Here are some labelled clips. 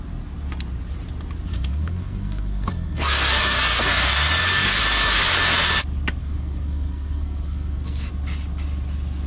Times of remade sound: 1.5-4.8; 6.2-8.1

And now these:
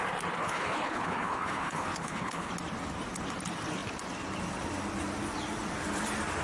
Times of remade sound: 0.4-2.5

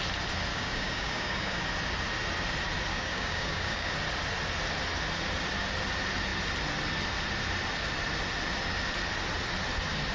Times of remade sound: 0.5-1.6; 2.9-3.9

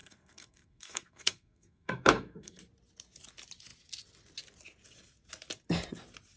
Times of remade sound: 0.0-2.6

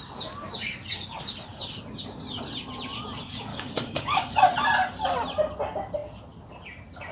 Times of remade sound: 3.5-4.4